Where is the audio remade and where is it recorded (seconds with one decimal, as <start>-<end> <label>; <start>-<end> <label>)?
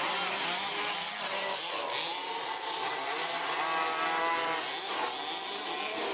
0.0-6.1 recorded